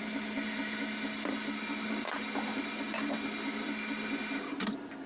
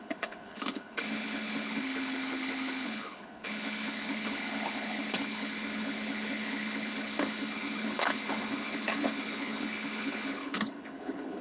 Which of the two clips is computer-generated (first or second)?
second